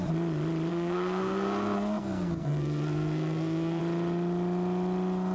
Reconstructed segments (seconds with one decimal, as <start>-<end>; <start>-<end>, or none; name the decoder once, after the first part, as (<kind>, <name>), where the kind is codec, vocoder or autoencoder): 0.7-3.8 (codec, SNAC)